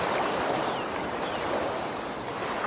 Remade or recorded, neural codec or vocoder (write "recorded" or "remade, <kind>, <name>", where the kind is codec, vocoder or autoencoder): recorded